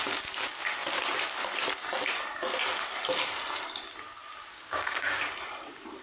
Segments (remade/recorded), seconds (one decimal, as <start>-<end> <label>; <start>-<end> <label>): 0.0-4.5 recorded; 4.5-5.2 remade; 5.2-6.0 recorded